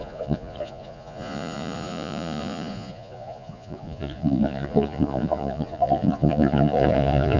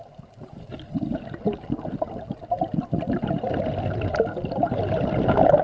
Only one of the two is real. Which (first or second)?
second